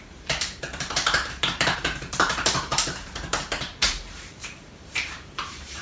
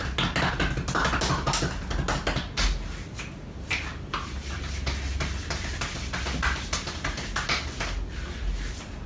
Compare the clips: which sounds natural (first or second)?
second